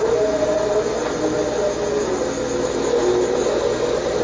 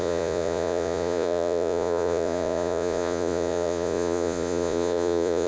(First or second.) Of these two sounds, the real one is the first